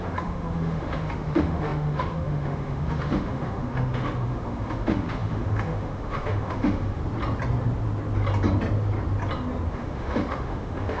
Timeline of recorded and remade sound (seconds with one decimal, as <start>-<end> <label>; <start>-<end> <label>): 0.0-7.0 remade; 7.0-9.7 recorded; 9.7-11.0 remade